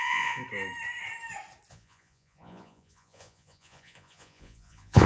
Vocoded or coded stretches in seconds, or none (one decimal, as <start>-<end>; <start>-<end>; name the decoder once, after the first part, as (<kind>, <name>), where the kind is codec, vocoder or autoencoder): 0.0-0.4 (vocoder, Vocos); 1.7-5.1

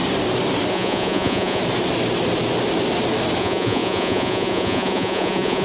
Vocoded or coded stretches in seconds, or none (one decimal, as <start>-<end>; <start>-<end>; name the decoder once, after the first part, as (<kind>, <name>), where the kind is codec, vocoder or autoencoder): 0.7-1.6 (vocoder, Vocos); 3.4-5.6

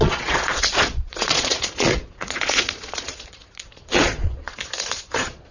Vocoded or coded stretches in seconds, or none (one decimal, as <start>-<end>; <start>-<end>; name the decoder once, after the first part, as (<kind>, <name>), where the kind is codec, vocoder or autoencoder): 0.0-5.5 (vocoder, Vocos)

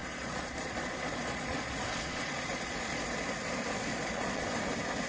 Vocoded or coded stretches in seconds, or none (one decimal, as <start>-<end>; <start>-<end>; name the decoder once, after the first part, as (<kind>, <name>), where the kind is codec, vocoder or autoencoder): 0.0-3.1 (vocoder, Vocos); 3.9-4.6

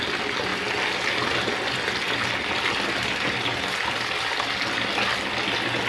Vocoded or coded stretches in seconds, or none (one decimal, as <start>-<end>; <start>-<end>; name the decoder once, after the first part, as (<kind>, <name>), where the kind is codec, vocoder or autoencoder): none

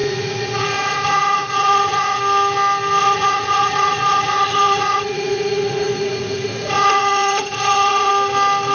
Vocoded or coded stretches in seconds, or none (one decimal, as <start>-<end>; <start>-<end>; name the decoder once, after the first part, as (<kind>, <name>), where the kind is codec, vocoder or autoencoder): 0.0-2.2 (vocoder, Vocos); 3.0-8.1